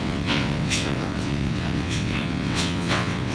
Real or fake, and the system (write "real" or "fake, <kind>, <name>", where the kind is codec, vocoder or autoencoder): fake, vocoder, WaveNeXt